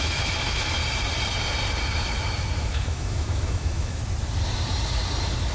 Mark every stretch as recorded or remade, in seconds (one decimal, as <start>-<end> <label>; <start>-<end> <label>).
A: 0.0-0.8 remade; 0.8-2.6 recorded; 2.6-4.0 remade; 4.0-5.5 recorded